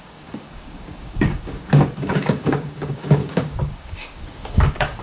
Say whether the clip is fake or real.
fake